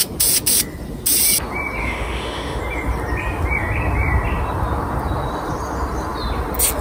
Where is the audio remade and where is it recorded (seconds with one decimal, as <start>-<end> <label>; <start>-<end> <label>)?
0.0-1.8 recorded; 1.8-2.6 remade; 2.6-6.8 recorded